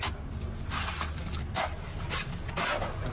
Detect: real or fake real